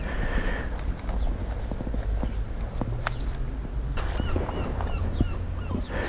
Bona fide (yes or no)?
yes